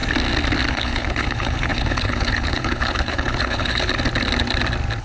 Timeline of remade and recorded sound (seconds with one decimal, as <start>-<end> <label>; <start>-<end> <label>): 0.0-0.7 recorded; 0.7-3.9 remade; 3.9-5.0 recorded